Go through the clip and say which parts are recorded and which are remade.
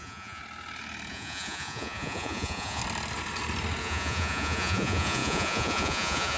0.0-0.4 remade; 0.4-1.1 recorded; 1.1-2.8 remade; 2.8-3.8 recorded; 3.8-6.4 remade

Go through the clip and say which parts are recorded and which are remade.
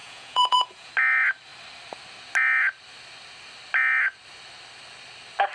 0.0-0.9 remade; 0.9-5.5 recorded